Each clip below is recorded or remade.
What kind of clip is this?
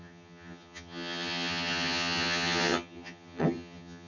remade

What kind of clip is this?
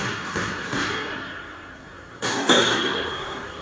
remade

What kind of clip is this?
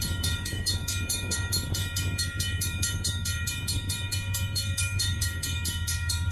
remade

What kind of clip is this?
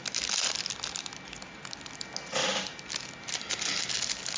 recorded